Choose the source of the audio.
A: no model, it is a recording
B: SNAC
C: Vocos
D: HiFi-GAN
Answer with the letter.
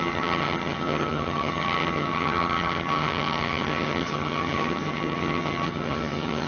D